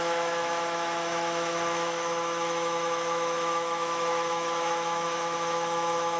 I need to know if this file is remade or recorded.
remade